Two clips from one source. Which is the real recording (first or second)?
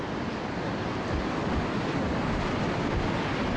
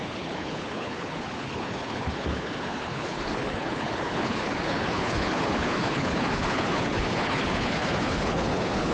first